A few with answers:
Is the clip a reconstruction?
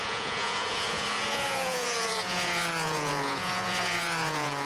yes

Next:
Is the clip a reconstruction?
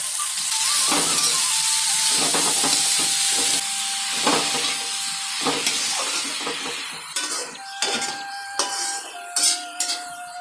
no